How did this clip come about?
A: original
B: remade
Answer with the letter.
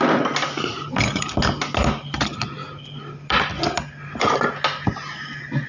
A